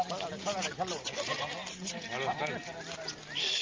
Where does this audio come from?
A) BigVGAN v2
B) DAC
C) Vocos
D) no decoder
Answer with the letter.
D